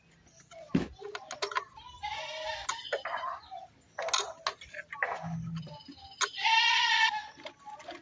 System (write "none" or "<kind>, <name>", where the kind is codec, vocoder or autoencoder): none